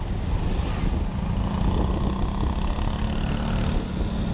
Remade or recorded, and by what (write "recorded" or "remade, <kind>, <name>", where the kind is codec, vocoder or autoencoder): recorded